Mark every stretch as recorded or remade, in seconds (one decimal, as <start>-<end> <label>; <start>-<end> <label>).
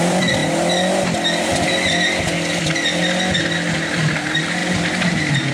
0.0-0.4 remade; 0.4-3.7 recorded; 3.7-5.5 remade